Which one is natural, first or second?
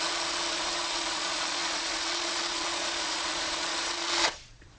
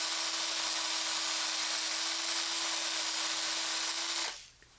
second